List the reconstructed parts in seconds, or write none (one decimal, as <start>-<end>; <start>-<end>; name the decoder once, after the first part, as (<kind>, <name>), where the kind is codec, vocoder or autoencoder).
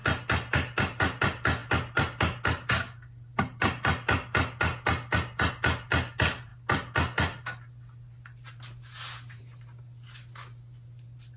none